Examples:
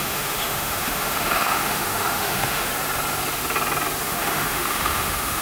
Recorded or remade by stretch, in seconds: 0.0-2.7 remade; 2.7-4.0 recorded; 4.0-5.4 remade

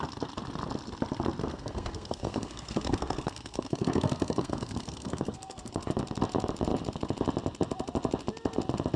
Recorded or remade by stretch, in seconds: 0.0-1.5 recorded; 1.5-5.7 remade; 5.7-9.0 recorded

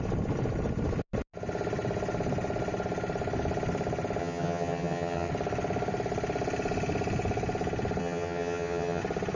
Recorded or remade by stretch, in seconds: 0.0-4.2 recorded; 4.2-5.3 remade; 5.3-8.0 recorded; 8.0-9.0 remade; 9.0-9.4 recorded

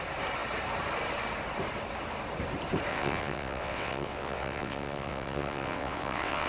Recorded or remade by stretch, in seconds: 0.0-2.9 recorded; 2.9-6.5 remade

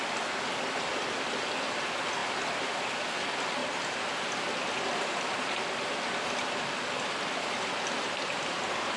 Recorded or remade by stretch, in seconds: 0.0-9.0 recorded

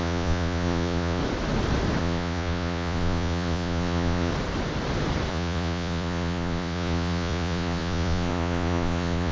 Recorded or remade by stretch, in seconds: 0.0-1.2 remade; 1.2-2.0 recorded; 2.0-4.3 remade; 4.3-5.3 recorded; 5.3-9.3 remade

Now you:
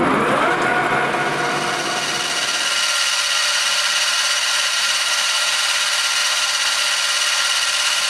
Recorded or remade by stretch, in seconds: 0.0-3.4 recorded; 3.4-5.6 remade; 5.6-6.2 recorded; 6.2-6.8 remade; 6.8-8.1 recorded

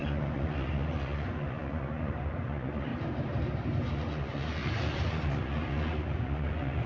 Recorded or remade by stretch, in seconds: 0.0-2.9 remade; 2.9-3.9 recorded; 3.9-6.9 remade